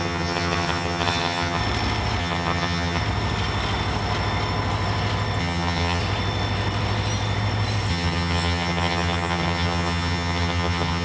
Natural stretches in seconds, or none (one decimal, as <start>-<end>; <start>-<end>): 1.6-2.2; 3.0-5.4; 6.0-7.9